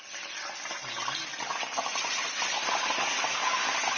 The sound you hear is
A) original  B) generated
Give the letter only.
A